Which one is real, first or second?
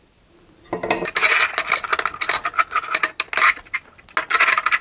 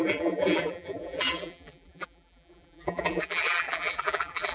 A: first